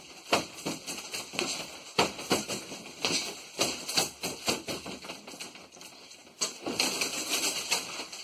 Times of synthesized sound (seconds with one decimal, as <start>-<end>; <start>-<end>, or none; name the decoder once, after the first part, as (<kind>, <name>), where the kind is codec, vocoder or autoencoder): none